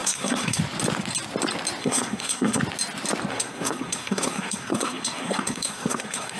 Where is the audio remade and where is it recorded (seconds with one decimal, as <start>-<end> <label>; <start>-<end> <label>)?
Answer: 0.0-0.6 remade; 0.6-1.8 recorded; 1.8-2.6 remade; 2.6-3.3 recorded; 3.3-6.4 remade